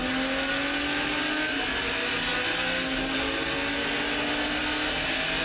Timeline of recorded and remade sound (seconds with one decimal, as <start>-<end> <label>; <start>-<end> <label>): 0.0-5.4 recorded